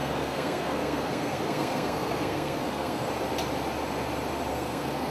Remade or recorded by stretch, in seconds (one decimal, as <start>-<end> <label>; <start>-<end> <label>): 0.0-3.1 remade; 3.1-4.5 recorded; 4.5-5.1 remade